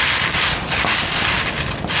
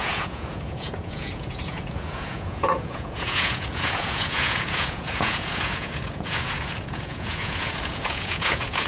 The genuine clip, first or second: first